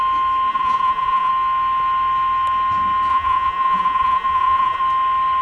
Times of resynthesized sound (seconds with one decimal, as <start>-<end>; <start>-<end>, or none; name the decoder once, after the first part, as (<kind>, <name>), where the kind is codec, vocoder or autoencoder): 0.5-1.3 (vocoder, Vocos); 3.1-4.8